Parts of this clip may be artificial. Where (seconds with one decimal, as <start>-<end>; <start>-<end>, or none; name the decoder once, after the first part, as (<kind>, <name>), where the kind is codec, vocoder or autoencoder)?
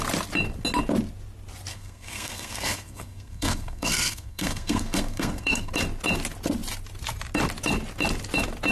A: 1.7-5.7 (codec, SNAC)